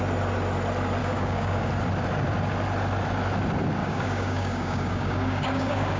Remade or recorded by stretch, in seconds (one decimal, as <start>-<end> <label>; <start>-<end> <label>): 0.0-1.0 recorded; 1.0-1.7 remade; 1.7-3.8 recorded; 3.8-6.0 remade